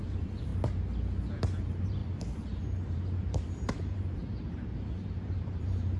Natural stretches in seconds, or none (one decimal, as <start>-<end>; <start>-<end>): 0.5-1.6